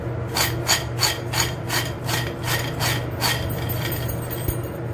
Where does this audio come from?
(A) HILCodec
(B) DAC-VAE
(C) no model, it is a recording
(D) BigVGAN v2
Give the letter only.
C